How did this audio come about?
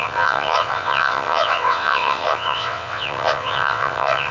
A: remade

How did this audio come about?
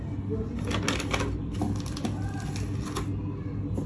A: recorded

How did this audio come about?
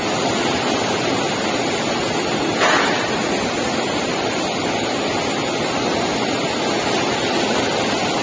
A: recorded